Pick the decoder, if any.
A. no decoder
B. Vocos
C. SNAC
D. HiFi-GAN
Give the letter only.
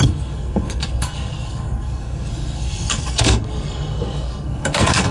C